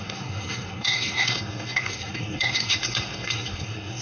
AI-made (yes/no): yes